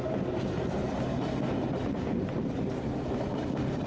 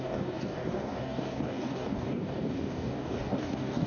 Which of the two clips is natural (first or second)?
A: first